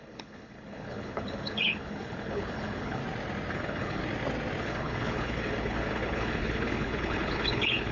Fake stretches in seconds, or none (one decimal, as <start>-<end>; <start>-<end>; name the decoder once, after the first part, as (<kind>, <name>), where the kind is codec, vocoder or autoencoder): 0.0-3.0 (codec, HILCodec); 3.5-4.0; 4.6-7.9